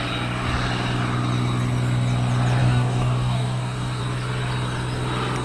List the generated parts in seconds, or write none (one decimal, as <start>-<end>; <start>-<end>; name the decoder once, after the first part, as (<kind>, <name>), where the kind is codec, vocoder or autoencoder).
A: 2.6-4.0 (codec, DAC)